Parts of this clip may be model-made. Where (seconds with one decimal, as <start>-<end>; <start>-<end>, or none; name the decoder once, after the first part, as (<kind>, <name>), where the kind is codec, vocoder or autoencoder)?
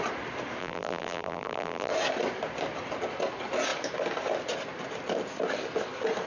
0.6-1.9 (vocoder, BigVGAN v2)